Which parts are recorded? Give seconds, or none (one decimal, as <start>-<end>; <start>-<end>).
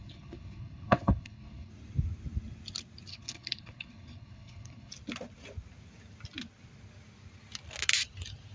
1.7-3.1; 4.9-8.5